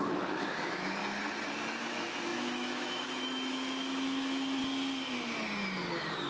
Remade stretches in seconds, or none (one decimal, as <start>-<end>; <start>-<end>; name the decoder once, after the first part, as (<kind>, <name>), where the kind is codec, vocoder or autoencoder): 0.0-1.0 (autoencoder, DAC-VAE); 1.8-4.6